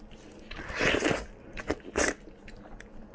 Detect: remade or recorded recorded